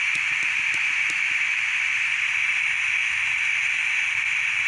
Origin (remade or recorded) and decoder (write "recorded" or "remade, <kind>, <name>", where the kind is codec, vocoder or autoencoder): recorded